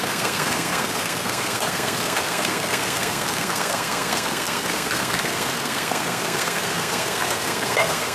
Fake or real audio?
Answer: fake